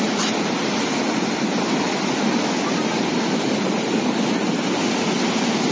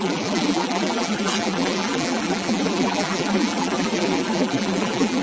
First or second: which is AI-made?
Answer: second